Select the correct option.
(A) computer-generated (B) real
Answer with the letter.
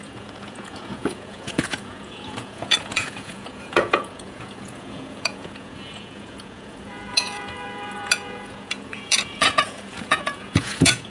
A